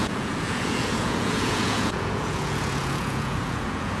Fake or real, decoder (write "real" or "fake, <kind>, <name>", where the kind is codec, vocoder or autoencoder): fake, vocoder, Vocos